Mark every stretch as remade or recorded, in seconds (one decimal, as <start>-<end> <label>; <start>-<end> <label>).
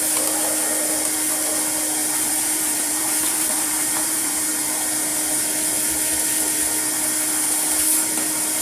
0.0-2.0 recorded; 2.0-4.5 remade; 4.5-8.6 recorded